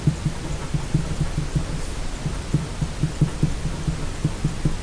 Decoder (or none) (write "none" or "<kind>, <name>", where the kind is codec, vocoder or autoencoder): none